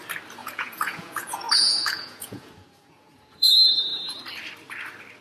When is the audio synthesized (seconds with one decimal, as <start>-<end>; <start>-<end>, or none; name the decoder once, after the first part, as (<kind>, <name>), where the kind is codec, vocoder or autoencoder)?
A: 0.4-3.5 (vocoder, Vocos)